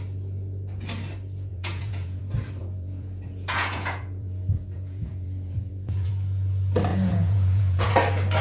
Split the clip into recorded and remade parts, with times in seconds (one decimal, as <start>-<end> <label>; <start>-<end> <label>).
0.0-1.5 recorded; 1.5-2.2 remade; 2.2-2.6 recorded; 2.6-6.1 remade; 6.1-6.9 recorded; 6.9-7.9 remade; 7.9-8.4 recorded